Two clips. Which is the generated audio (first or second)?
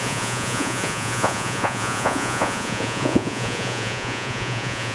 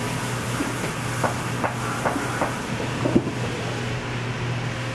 first